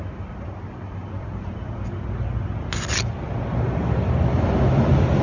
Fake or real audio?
real